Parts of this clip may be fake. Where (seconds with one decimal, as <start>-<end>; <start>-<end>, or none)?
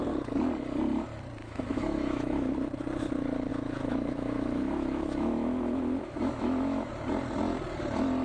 1.4-2.5; 3.5-6.9